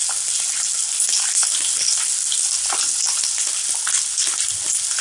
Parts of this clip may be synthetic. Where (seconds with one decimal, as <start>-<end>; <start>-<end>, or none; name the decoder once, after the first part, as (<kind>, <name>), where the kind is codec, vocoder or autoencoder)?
none